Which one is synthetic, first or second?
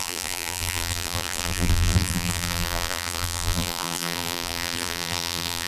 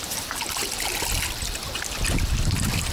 first